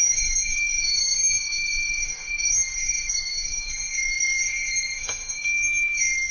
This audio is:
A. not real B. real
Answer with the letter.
A